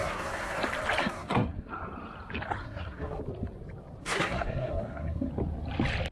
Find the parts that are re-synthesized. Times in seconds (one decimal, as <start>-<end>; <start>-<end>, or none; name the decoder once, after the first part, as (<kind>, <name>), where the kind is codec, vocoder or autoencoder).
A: 0.0-0.6 (codec, SNAC); 1.0-1.7; 2.6-3.2; 4.0-5.3